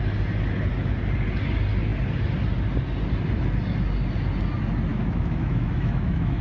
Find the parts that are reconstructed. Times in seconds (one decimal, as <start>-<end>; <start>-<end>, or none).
4.9-6.4